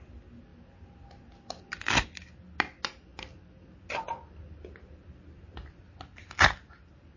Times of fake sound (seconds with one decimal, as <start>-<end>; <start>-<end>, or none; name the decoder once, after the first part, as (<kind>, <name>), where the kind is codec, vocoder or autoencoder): none